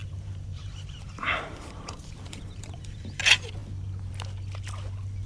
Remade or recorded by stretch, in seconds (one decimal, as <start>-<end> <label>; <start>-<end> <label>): 0.0-3.2 remade; 3.2-5.3 recorded